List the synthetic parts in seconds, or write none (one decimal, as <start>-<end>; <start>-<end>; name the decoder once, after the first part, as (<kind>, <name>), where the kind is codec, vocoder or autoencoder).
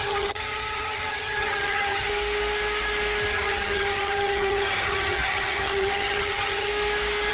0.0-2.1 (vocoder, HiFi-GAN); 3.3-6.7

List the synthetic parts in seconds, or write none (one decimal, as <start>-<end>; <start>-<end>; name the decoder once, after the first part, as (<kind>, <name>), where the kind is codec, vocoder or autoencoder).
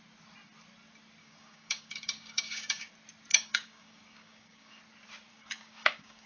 1.2-2.9 (codec, DAC); 3.3-4.8; 5.3-6.3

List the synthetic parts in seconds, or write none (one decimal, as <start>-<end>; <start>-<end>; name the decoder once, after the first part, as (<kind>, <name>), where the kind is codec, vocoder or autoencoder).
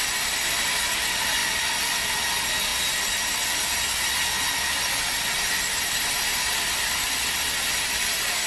1.4-2.1 (vocoder, BigVGAN v2)